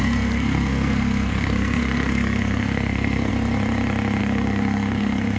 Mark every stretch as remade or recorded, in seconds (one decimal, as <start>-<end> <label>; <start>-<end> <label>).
0.0-3.3 remade; 3.3-4.2 recorded; 4.2-5.4 remade